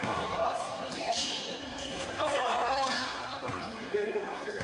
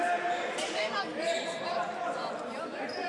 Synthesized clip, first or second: first